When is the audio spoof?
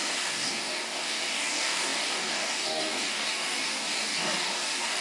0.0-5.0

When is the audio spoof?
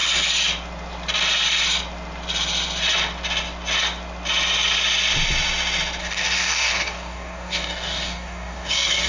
6.0-9.1